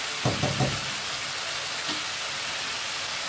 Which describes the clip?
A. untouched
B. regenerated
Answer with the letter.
A